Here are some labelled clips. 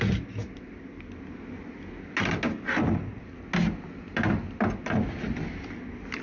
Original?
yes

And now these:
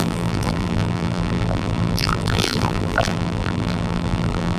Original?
no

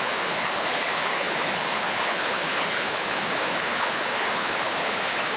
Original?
no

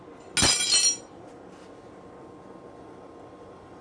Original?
yes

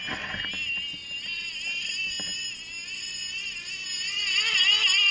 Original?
yes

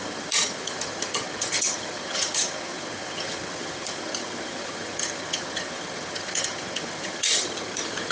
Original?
no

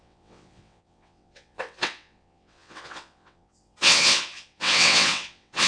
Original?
no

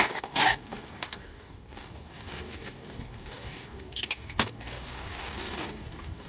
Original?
no